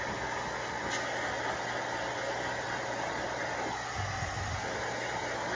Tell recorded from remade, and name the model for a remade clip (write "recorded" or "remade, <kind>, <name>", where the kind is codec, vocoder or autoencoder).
recorded